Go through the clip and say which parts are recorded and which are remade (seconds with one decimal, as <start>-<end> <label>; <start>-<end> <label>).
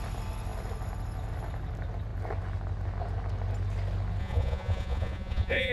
0.0-4.2 recorded; 4.2-5.7 remade